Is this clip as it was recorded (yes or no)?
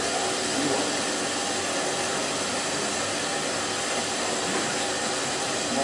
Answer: yes